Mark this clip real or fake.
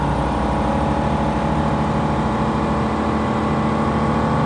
real